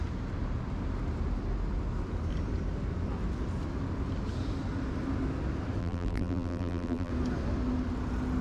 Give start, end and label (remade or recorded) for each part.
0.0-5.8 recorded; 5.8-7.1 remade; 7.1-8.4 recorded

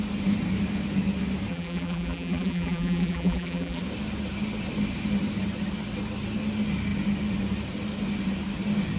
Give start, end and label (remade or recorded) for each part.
0.0-1.5 recorded; 1.5-3.8 remade; 3.8-9.0 recorded

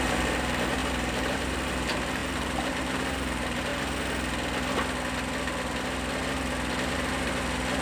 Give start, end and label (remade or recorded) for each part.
0.0-3.7 remade; 3.7-6.9 recorded; 6.9-7.8 remade

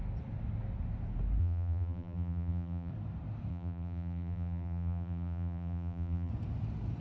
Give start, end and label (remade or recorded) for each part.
0.0-1.4 recorded; 1.4-2.9 remade; 2.9-3.5 recorded; 3.5-6.3 remade; 6.3-7.0 recorded

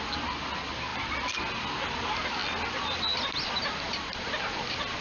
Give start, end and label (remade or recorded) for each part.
0.0-5.0 recorded

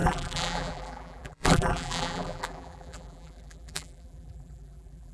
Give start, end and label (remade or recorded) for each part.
0.0-5.1 remade

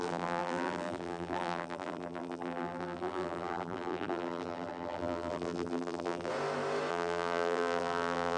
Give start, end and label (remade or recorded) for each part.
0.0-6.3 remade; 6.3-6.9 recorded; 6.9-8.4 remade

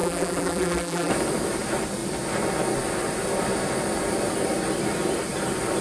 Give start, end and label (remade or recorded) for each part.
0.0-1.1 remade; 1.1-5.8 recorded